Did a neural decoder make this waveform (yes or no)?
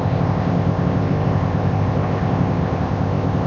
yes